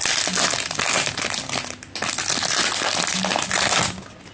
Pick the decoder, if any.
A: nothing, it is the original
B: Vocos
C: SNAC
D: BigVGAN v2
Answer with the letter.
A